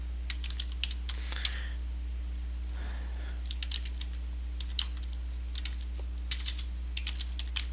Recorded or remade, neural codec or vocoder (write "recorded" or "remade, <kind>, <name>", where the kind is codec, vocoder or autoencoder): recorded